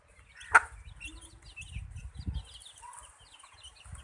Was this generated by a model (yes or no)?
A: no